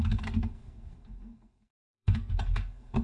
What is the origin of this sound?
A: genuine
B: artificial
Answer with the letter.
B